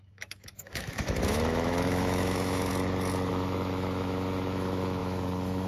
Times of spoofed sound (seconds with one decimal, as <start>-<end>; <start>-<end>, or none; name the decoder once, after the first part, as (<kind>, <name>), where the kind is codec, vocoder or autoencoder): 0.0-2.7 (autoencoder, DAC-VAE); 3.3-5.7